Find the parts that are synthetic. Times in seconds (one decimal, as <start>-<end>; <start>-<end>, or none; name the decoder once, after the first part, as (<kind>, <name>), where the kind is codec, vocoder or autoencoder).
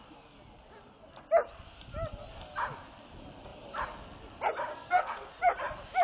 4.7-5.3 (codec, SNAC)